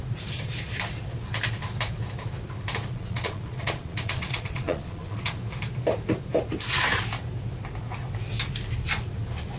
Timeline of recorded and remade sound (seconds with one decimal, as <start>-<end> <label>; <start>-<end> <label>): 0.0-2.9 recorded; 2.9-5.4 remade; 5.4-9.6 recorded